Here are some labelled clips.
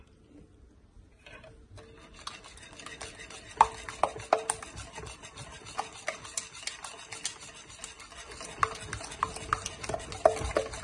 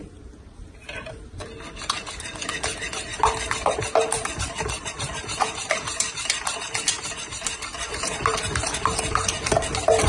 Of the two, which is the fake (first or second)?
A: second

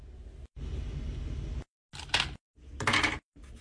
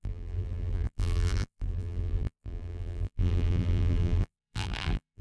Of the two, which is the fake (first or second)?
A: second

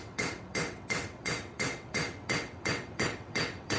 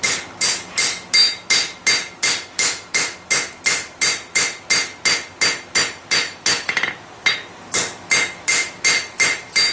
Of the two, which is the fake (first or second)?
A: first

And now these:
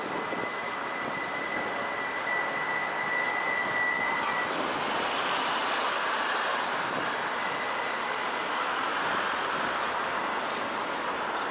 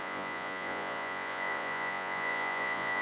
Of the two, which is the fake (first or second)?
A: second